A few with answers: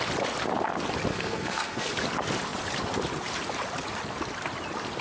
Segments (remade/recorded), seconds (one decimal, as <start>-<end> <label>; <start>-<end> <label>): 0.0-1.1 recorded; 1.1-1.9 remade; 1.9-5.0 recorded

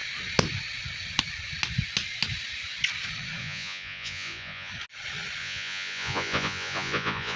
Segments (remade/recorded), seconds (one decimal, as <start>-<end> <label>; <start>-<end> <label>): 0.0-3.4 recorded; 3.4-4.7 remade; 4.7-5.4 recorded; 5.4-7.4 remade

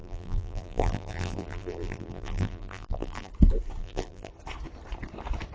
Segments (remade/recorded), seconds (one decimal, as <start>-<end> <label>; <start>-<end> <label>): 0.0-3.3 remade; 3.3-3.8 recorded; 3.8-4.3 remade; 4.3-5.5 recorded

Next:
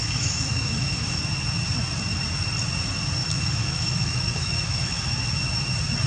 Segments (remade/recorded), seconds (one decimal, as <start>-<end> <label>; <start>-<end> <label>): 0.0-1.2 remade; 1.2-3.2 recorded; 3.2-5.0 remade; 5.0-6.1 recorded